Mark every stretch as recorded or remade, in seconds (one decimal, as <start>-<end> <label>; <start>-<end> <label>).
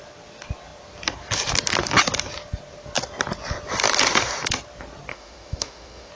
0.0-5.1 recorded; 5.1-6.1 remade